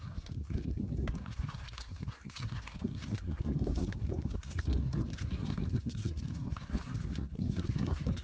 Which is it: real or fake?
fake